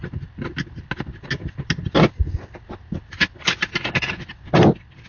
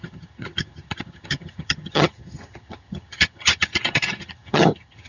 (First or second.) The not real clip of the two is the second